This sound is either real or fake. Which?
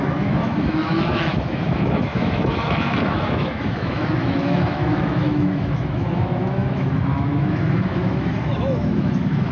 fake